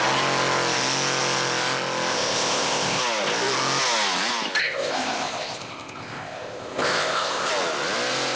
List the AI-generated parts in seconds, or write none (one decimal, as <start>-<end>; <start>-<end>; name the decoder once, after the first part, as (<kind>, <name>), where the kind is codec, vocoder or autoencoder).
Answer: 2.1-3.0 (codec, ZipCodec); 4.6-7.5